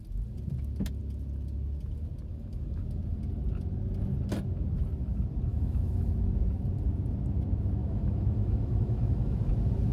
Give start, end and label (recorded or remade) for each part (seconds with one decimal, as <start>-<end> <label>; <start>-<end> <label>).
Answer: 0.0-2.3 recorded; 2.3-3.0 remade; 3.0-5.5 recorded; 5.5-6.1 remade; 6.1-7.8 recorded; 7.8-9.5 remade; 9.5-9.9 recorded